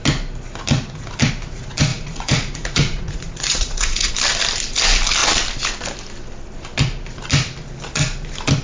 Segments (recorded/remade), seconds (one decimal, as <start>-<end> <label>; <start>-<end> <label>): 0.0-1.9 recorded; 1.9-4.1 remade; 4.1-8.6 recorded